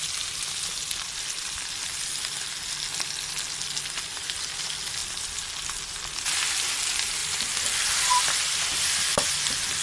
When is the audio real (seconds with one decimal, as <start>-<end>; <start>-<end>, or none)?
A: 0.0-7.2; 9.3-9.8

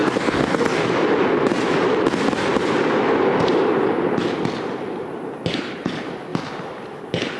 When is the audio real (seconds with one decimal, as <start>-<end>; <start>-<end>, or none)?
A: 0.9-7.4

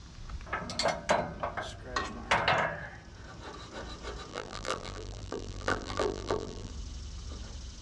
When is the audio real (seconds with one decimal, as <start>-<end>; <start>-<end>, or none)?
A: 0.0-4.3; 6.7-7.8

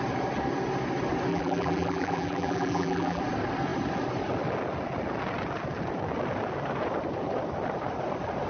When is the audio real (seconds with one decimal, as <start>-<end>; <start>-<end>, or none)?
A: 0.0-1.3; 3.2-8.5

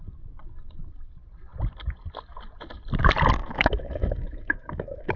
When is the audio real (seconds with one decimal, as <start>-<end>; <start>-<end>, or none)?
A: 0.0-3.4

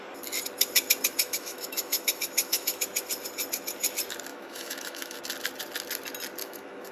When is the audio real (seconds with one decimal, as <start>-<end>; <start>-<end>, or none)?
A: 0.0-1.2; 2.8-4.3; 5.2-6.4